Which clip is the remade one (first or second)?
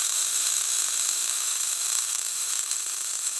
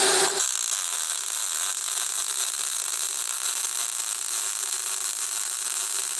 first